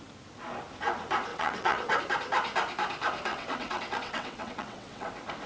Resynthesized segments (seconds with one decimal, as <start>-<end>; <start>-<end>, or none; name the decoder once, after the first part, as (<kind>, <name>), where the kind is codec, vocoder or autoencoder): 1.3-2.0 (vocoder, WaveNeXt); 3.3-5.1